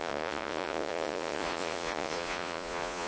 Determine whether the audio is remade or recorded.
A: remade